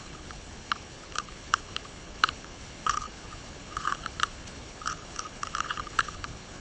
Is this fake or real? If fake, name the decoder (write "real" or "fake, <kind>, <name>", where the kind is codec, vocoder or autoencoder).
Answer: fake, codec, HILCodec